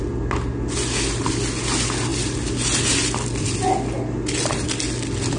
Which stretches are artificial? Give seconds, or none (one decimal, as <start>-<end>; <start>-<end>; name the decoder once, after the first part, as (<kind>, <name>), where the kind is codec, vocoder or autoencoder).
none